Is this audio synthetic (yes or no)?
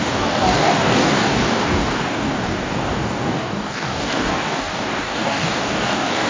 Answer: yes